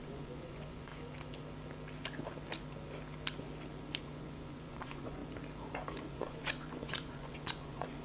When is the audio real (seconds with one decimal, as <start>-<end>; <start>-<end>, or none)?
0.9-4.0; 5.2-6.1

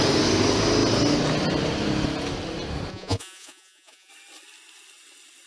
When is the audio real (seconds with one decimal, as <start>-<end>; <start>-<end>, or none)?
0.0-2.9; 4.1-5.5

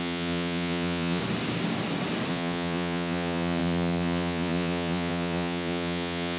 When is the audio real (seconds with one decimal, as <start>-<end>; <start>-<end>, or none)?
1.2-2.3

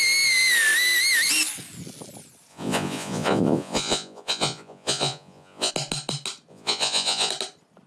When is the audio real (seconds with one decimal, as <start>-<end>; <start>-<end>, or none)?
0.0-2.5; 5.7-6.5; 7.3-7.9

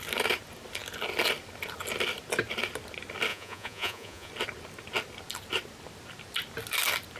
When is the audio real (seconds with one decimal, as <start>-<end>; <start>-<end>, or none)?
0.0-3.3; 4.3-7.2

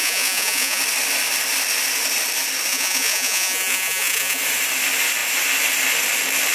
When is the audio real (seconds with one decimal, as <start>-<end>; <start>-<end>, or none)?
0.8-2.7; 4.4-6.5